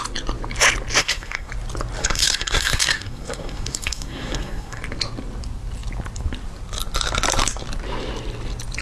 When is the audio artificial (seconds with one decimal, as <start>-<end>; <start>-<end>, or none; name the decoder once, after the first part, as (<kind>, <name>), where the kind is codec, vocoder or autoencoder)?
1.0-1.5 (codec, SNAC); 2.0-4.8

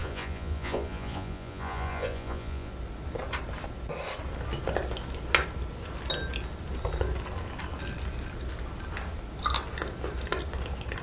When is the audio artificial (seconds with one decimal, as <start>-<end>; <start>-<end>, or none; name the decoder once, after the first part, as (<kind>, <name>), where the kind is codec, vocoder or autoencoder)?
0.0-2.7 (vocoder, Vocos)

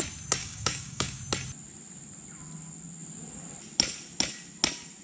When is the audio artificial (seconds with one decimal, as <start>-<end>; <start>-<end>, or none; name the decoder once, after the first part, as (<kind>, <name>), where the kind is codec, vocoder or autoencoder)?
0.4-1.2 (codec, DAC)

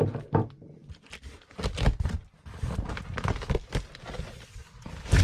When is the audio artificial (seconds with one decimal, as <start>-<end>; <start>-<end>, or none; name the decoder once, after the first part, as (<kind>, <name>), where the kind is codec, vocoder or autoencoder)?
none